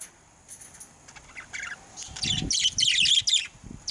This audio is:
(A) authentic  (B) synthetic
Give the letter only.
A